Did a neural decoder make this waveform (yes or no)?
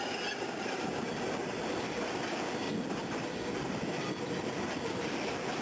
no